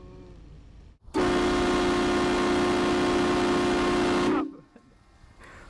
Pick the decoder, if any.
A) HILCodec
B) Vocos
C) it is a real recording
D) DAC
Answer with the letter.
C